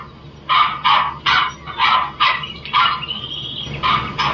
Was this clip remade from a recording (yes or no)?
no